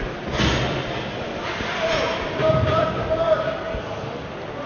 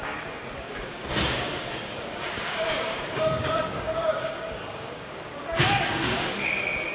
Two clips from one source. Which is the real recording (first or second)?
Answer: first